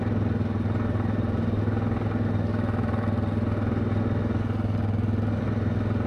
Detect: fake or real real